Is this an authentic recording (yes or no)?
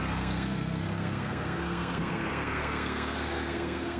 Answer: no